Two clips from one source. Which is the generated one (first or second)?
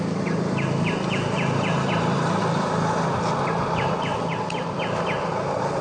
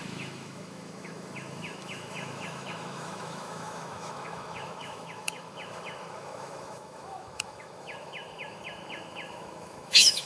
second